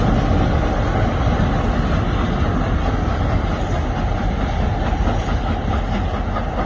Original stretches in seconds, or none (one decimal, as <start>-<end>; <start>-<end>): 0.0-6.7